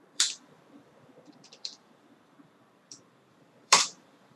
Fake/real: fake